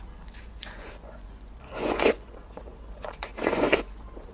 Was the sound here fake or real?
fake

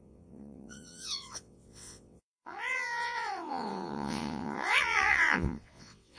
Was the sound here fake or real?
fake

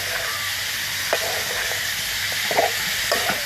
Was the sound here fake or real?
real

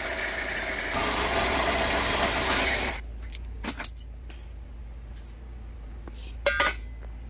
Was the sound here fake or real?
real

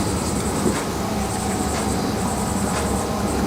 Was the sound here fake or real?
real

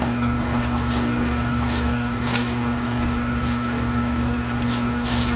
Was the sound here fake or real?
fake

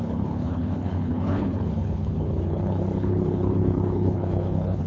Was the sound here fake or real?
fake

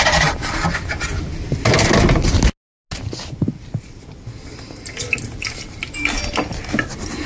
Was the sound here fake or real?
real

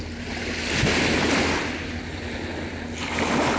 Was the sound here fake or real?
real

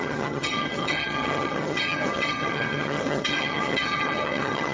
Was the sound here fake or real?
fake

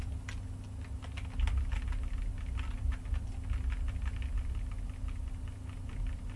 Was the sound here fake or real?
real